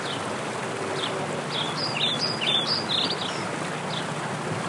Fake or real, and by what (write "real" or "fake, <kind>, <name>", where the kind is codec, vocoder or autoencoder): real